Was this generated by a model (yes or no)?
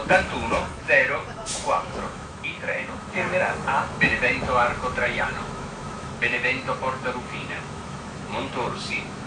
yes